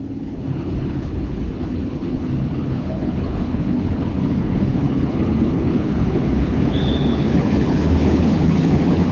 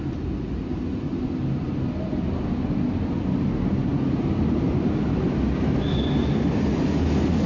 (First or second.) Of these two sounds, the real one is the second